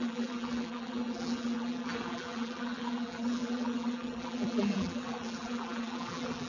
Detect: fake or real fake